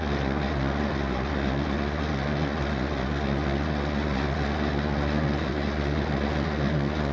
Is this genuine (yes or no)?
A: no